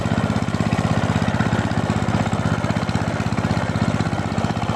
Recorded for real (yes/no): yes